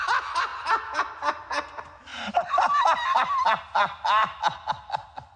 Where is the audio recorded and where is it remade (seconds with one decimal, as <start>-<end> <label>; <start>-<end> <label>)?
0.0-0.5 recorded; 0.5-1.2 remade; 1.2-2.1 recorded; 2.1-4.4 remade; 4.4-5.4 recorded